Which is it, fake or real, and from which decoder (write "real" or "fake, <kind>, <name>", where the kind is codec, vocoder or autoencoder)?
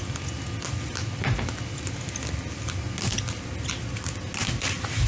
real